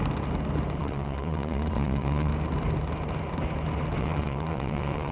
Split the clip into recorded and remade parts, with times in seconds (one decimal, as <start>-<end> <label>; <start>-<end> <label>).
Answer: 0.0-0.8 recorded; 0.8-2.3 remade; 2.3-4.0 recorded; 4.0-5.1 remade